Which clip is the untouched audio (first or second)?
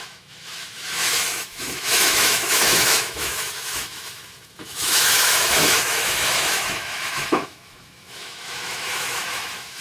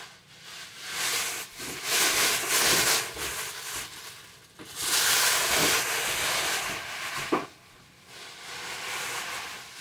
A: second